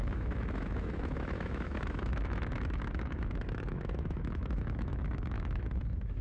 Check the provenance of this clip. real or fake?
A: fake